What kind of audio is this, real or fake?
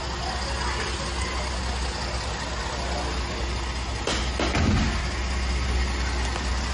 real